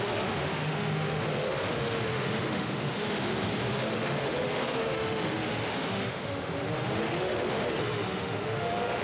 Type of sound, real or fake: fake